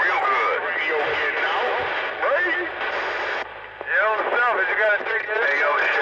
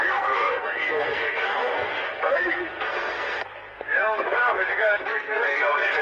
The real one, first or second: first